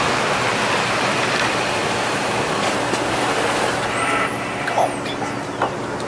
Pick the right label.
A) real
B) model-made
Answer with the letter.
A